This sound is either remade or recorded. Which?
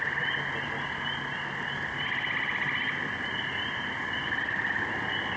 recorded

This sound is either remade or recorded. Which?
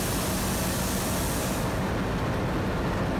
recorded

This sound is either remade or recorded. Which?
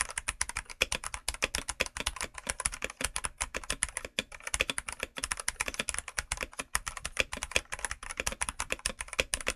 recorded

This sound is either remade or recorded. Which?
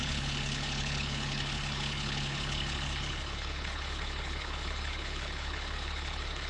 remade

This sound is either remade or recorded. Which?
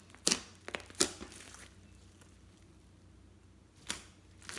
recorded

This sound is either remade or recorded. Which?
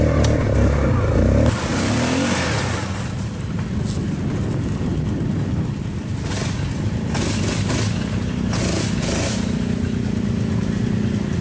recorded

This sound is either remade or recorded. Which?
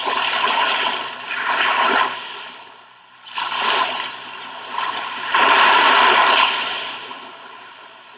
remade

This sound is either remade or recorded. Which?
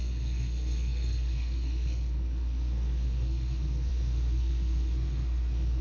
remade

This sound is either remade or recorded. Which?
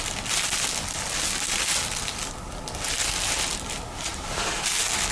recorded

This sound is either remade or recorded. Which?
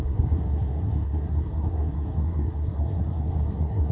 remade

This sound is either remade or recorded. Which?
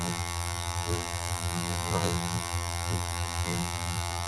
remade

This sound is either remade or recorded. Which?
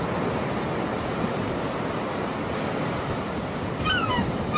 remade